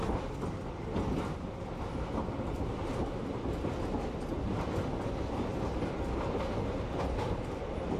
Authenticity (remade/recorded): recorded